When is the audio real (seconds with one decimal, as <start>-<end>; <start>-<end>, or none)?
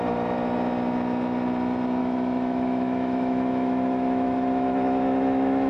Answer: 0.0-2.0